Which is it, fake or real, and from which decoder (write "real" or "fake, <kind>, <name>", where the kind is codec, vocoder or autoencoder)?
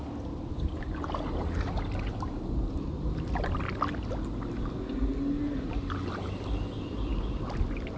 real